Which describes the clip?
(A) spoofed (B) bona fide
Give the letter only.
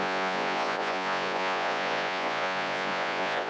A